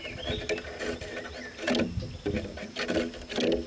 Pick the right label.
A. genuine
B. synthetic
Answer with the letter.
A